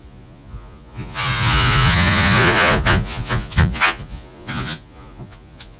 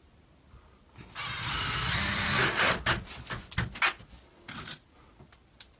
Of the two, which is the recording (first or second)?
second